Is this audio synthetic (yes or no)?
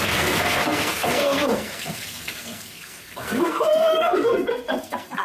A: yes